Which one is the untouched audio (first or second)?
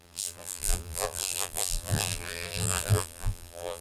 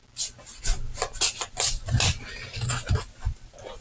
second